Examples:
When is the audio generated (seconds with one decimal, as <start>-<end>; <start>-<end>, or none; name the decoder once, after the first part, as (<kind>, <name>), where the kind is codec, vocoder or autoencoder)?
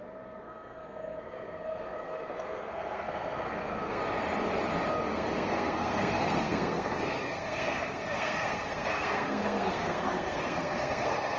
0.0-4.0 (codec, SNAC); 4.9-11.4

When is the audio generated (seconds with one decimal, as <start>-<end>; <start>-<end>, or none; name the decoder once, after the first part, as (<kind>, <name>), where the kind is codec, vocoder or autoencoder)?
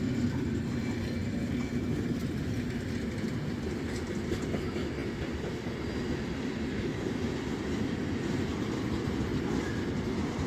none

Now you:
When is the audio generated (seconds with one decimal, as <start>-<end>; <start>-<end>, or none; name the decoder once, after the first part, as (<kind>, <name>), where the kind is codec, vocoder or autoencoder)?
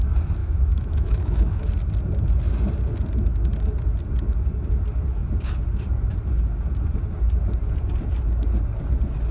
0.4-1.7 (autoencoder, DAC-VAE)